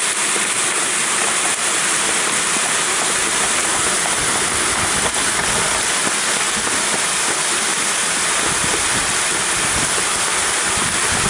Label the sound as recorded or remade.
recorded